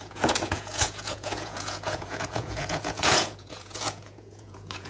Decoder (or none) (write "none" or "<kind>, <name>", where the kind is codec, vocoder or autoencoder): vocoder, Vocos